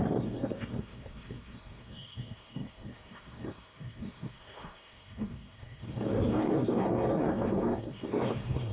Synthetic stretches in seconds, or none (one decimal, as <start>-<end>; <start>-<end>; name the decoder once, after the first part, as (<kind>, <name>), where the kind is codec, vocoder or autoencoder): 0.0-8.7 (codec, SNAC)